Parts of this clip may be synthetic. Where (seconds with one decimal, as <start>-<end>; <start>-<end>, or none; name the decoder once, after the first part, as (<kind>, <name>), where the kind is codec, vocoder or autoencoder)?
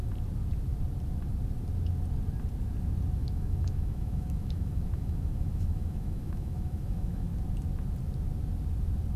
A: 3.2-7.3 (autoencoder, DAC-VAE)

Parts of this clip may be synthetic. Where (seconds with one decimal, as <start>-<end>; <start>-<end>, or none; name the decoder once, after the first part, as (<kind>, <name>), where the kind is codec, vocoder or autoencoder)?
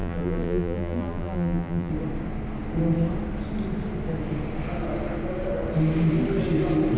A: 0.0-1.9 (vocoder, BigVGAN v2)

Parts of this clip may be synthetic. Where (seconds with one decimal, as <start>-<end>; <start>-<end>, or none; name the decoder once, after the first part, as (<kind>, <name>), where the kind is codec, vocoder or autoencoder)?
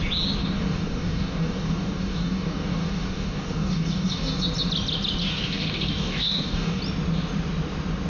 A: 0.4-4.4 (codec, DAC); 5.2-6.8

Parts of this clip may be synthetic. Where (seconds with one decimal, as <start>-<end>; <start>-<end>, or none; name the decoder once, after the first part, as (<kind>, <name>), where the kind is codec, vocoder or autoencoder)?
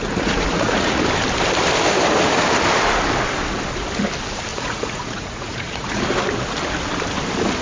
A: 0.0-1.0 (vocoder, Vocos); 4.5-6.0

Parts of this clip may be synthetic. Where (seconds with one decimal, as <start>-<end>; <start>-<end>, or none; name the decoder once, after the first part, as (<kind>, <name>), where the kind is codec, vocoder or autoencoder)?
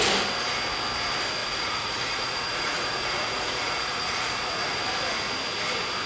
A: 1.4-4.8 (vocoder, Vocos)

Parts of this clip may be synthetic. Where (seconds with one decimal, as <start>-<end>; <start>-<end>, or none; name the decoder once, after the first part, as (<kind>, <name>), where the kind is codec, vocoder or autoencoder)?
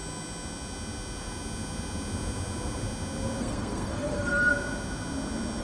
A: 3.4-4.5 (codec, SNAC)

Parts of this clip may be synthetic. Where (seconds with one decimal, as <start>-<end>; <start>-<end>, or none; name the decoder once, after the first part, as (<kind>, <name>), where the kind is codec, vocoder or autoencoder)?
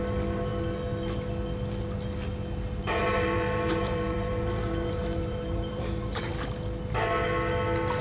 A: 3.0-6.3 (vocoder, BigVGAN v2)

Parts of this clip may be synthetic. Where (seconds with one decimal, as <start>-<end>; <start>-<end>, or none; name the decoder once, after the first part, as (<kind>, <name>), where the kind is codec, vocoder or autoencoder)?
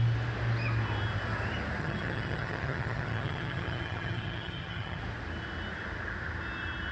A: 1.8-5.0 (vocoder, HiFi-GAN)